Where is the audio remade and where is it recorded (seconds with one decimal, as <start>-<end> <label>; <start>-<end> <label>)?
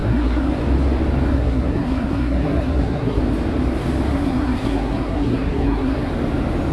0.0-0.5 remade; 0.5-1.3 recorded; 1.3-3.2 remade; 3.2-4.1 recorded; 4.1-6.1 remade; 6.1-6.7 recorded